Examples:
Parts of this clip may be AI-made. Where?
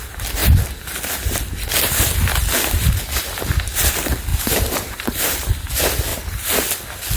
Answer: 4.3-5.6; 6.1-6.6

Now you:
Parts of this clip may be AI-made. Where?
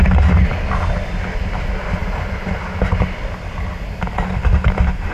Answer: none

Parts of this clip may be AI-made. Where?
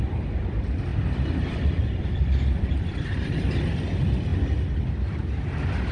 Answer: 0.9-3.4; 4.3-5.2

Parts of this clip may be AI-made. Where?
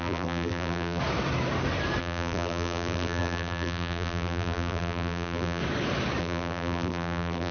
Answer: 0.0-1.0; 2.0-5.6; 6.2-7.5